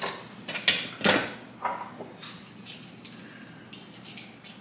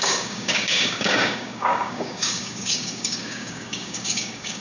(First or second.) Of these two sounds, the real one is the first